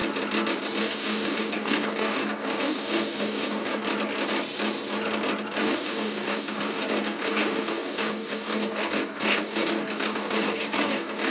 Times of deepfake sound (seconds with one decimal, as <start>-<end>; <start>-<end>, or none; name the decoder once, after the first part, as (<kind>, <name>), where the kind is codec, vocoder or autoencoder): 0.8-3.8 (codec, DAC); 5.6-11.3

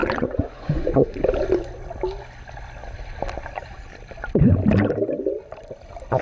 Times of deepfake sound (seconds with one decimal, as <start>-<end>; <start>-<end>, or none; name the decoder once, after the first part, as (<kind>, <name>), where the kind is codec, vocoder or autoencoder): 0.0-1.2 (vocoder, Vocos)